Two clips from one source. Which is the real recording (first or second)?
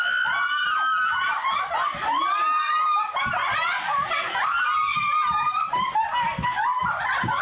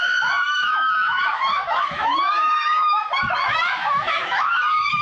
first